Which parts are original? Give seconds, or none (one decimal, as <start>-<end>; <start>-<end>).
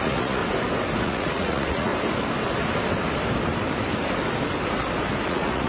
0.4-1.0; 1.9-5.3